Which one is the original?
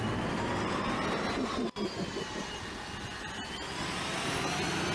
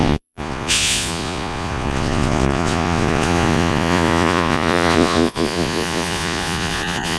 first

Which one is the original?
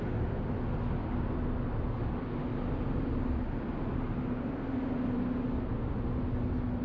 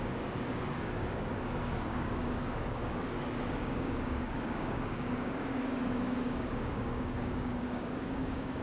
first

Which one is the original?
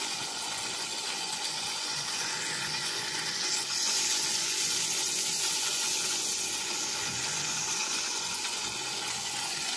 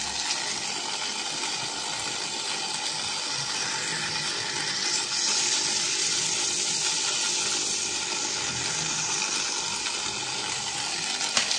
second